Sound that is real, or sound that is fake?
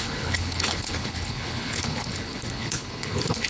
fake